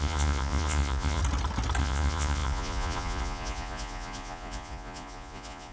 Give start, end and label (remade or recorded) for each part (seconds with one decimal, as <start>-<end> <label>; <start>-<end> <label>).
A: 0.0-1.2 remade; 1.2-1.8 recorded; 1.8-5.7 remade